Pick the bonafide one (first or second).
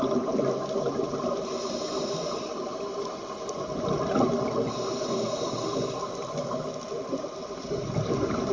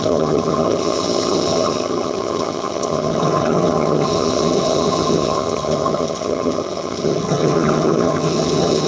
first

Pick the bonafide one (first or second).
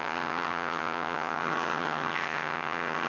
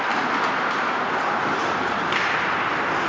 second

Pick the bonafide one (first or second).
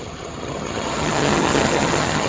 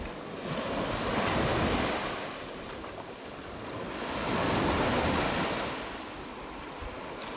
second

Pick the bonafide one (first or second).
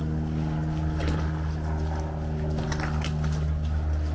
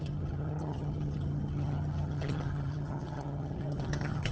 first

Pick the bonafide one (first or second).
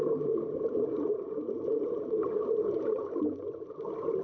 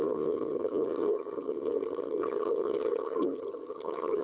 first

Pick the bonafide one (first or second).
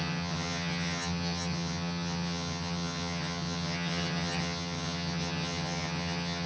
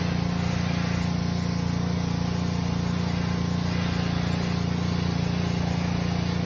second